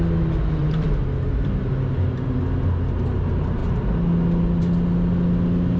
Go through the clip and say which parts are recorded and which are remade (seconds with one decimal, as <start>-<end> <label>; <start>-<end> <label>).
0.0-5.8 recorded